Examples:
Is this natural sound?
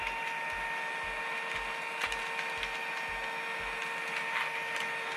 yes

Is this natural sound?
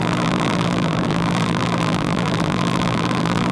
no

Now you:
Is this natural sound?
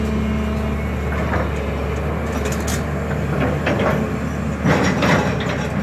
yes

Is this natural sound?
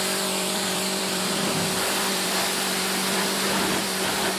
no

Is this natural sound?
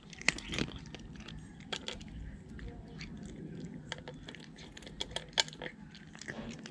yes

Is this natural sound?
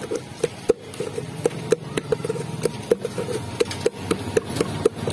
yes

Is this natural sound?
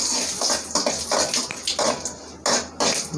yes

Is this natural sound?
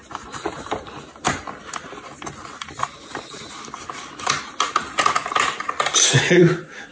yes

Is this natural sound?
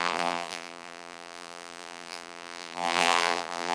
no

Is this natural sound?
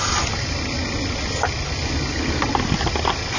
yes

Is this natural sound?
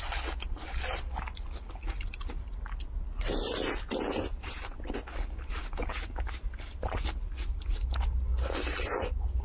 yes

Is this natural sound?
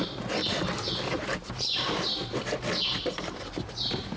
no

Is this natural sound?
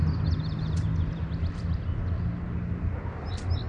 yes